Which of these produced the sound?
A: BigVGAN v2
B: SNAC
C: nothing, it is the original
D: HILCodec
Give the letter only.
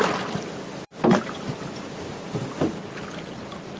C